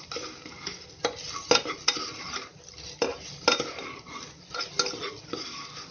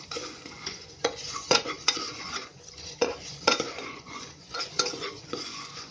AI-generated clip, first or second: second